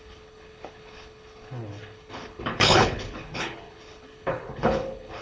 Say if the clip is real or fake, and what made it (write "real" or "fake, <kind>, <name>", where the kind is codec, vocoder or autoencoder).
fake, codec, HILCodec